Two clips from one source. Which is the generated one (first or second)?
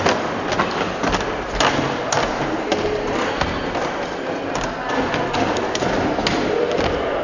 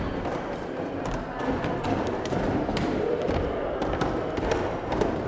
second